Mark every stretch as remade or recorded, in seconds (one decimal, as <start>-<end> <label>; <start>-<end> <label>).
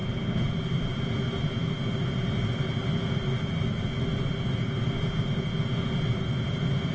0.0-6.9 recorded